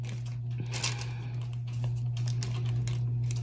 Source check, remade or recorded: recorded